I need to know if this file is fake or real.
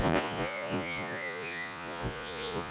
fake